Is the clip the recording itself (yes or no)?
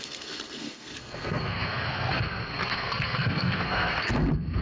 no